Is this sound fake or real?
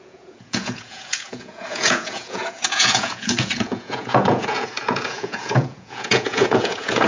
fake